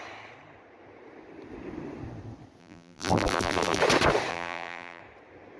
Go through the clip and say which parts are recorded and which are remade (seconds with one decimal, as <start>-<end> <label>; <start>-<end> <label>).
0.0-2.6 recorded; 2.6-3.8 remade; 3.8-4.3 recorded; 4.3-5.0 remade; 5.0-5.6 recorded